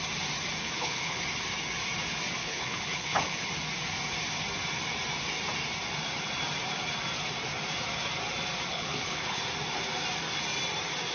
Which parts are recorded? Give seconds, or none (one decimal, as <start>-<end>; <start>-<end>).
0.0-0.6; 1.2-2.4; 3.5-8.7; 9.4-11.1